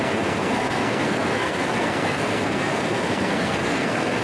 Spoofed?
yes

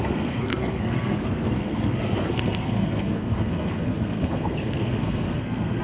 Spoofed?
yes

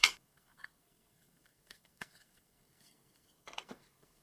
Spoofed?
yes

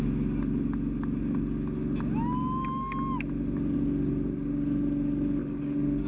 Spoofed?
no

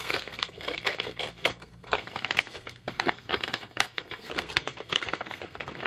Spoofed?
yes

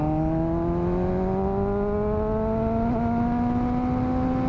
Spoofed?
no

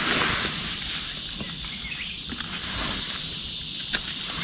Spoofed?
no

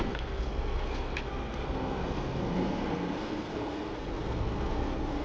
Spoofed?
yes